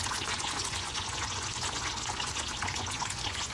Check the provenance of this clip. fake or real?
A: fake